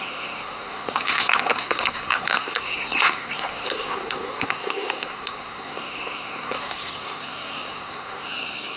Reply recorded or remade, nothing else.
remade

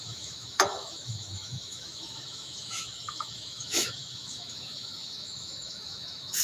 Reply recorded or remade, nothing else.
remade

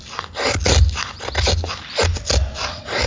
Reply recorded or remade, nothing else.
recorded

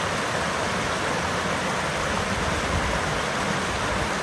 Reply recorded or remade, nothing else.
recorded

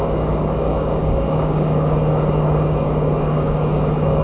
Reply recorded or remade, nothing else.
remade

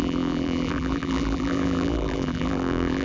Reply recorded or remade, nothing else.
remade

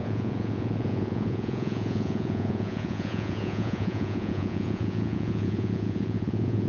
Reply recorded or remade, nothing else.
remade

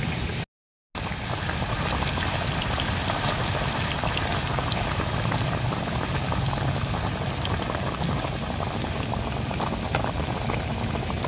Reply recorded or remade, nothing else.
recorded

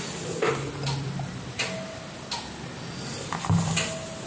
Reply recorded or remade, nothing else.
recorded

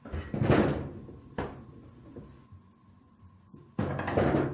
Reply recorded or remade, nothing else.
recorded